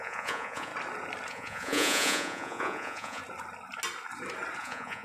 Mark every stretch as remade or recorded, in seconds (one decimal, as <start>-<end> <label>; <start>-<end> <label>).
0.0-0.7 remade; 0.7-1.3 recorded; 1.3-3.2 remade; 3.2-4.6 recorded; 4.6-5.0 remade